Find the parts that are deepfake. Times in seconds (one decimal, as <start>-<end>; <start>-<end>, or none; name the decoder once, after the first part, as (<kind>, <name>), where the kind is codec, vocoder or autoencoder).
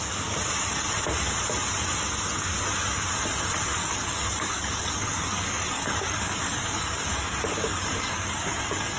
3.8-9.0 (codec, DAC)